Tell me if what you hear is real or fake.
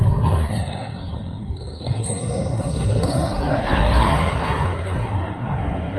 fake